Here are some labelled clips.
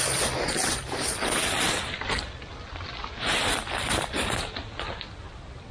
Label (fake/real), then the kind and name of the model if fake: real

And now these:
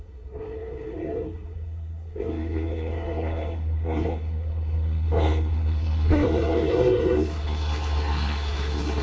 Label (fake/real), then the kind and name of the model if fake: fake, codec, SNAC